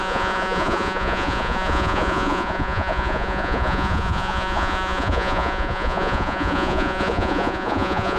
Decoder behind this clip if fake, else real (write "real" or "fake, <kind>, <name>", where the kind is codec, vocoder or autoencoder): fake, vocoder, Vocos